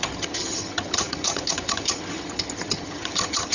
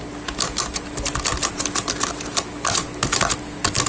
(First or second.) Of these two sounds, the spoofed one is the first